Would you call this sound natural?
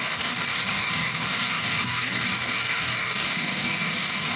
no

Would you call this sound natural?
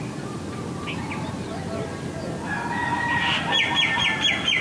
yes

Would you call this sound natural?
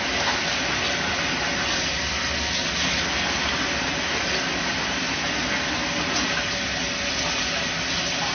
yes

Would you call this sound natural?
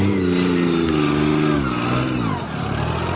yes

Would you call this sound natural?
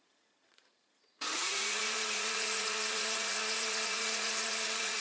no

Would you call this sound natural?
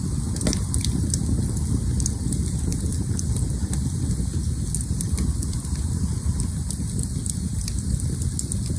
yes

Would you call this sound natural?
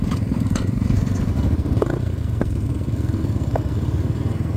no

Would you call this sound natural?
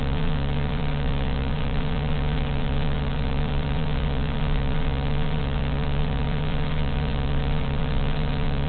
no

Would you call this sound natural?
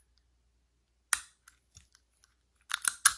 yes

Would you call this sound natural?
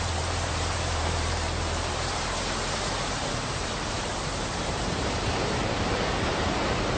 no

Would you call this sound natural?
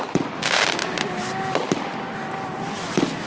yes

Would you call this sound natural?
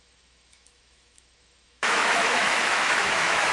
no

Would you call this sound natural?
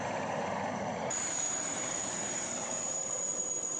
no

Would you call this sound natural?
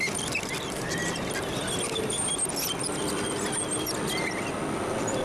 yes